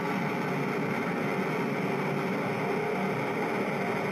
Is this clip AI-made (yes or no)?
no